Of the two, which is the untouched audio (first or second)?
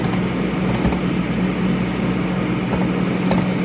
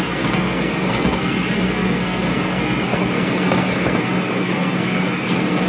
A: first